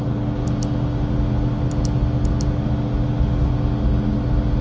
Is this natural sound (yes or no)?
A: yes